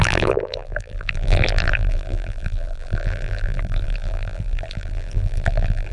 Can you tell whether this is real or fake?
fake